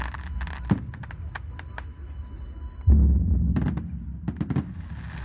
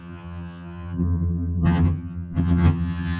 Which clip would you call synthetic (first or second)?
second